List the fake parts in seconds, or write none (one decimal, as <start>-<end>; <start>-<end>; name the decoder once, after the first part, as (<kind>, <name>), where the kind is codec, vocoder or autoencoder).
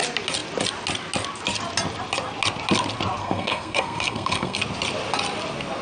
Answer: 3.2-4.6 (codec, SNAC)